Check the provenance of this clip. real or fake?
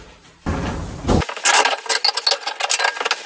real